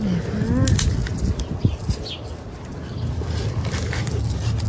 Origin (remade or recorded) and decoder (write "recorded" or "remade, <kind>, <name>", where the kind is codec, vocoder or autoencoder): recorded